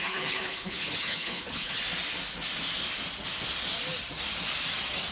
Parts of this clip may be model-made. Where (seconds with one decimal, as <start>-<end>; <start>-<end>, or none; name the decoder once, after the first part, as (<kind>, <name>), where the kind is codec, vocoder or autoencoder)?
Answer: 0.0-1.8 (codec, HILCodec)